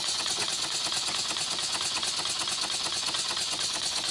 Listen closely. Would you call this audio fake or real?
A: fake